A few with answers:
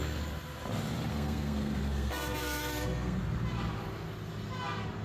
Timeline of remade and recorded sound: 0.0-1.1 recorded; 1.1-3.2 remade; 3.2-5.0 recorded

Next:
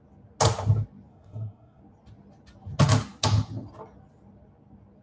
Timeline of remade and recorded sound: 0.0-1.1 recorded; 1.1-1.8 remade; 1.8-5.0 recorded

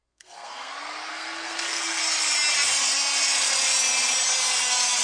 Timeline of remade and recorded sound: 0.0-0.7 remade; 0.7-1.1 recorded; 1.1-2.0 remade; 2.0-5.0 recorded